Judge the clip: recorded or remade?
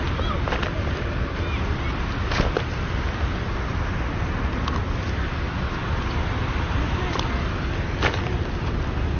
recorded